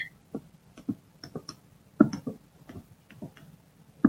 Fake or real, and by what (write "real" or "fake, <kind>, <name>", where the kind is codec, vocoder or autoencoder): real